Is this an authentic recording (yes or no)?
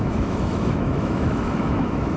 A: no